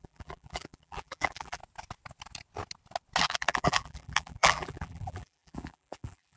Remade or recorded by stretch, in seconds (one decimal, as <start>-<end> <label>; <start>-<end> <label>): 0.0-1.6 remade; 1.6-3.2 recorded; 3.2-6.4 remade